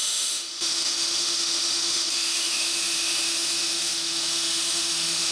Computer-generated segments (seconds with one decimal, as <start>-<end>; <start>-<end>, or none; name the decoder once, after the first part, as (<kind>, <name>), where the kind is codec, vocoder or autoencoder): 0.0-5.3 (autoencoder, DAC-VAE)